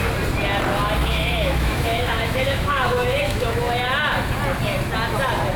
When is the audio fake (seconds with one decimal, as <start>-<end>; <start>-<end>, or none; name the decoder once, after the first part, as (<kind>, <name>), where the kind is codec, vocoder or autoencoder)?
1.0-3.7 (autoencoder, DAC-VAE)